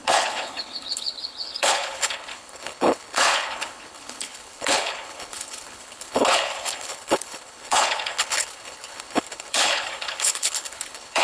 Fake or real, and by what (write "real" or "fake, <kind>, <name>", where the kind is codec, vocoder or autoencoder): fake, codec, HILCodec